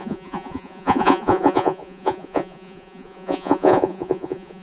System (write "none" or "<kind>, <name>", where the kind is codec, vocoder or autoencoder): vocoder, Vocos